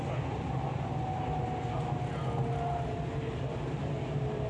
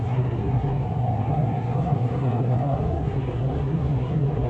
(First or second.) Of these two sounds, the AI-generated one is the second